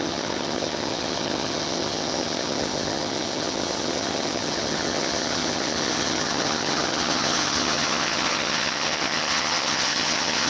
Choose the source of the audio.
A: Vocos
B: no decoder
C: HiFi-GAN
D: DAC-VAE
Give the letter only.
C